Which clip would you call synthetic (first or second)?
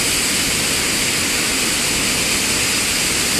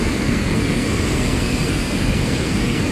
second